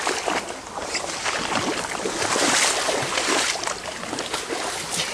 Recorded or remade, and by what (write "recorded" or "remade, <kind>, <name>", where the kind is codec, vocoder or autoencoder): recorded